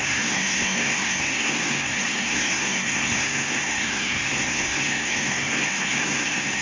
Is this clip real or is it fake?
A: fake